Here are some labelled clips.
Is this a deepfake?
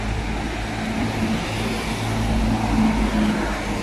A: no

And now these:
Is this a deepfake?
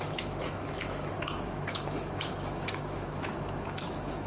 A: yes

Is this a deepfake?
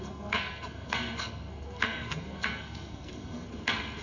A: yes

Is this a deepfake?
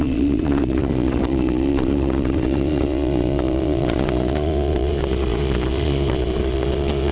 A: yes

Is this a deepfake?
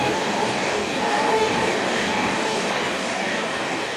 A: yes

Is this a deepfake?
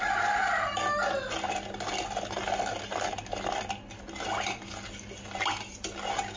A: no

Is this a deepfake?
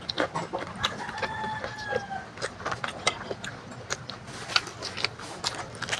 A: no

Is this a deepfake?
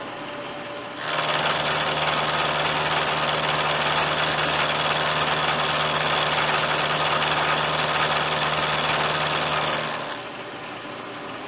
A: no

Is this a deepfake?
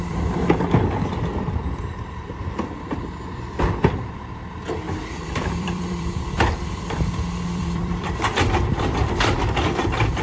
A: yes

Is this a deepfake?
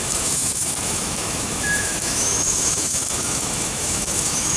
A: yes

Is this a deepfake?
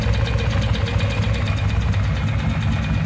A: no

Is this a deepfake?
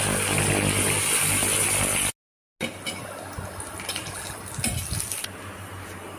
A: no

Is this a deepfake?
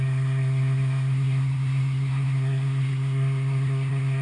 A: yes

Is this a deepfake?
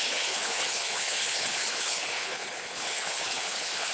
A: yes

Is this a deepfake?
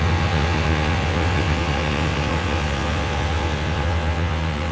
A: yes